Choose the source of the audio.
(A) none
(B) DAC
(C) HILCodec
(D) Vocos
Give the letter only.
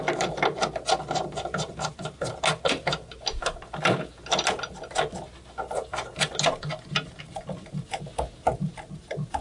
A